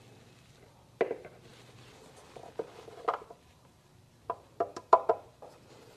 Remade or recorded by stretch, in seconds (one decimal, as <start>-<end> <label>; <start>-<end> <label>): 0.0-1.5 recorded; 1.5-5.1 remade; 5.1-6.0 recorded